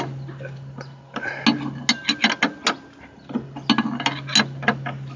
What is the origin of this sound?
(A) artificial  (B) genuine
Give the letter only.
B